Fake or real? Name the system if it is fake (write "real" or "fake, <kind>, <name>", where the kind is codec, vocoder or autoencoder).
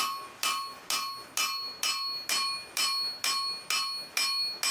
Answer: real